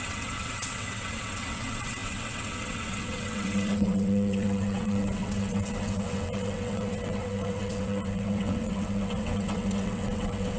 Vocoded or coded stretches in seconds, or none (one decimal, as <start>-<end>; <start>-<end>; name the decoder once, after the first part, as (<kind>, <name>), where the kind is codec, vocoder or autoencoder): 0.0-10.6 (vocoder, WaveNeXt)